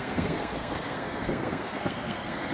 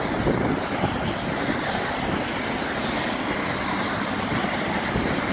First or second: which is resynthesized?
first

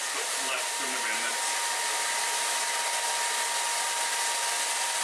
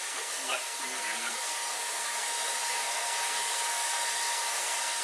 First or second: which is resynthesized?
second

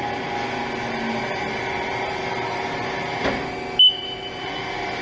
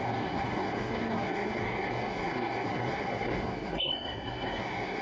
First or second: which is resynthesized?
second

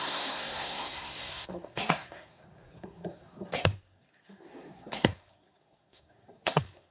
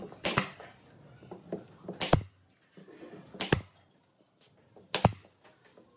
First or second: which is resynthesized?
first